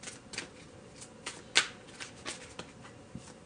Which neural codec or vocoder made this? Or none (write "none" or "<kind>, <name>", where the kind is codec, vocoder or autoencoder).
none